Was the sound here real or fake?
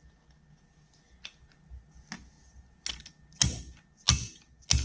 real